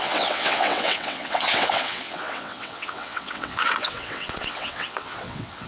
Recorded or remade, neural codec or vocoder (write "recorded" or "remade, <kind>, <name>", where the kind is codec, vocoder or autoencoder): remade, vocoder, WaveNeXt